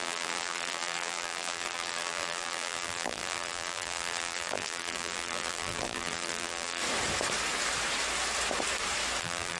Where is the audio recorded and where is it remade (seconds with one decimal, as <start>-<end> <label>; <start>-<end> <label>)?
0.0-6.8 remade; 6.8-9.2 recorded; 9.2-9.6 remade